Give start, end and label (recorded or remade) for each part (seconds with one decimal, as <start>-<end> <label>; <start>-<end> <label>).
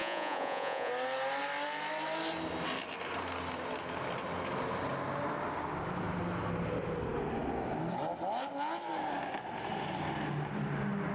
0.0-0.9 remade; 0.9-11.1 recorded